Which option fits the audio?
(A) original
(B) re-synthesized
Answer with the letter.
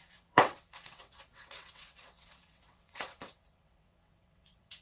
B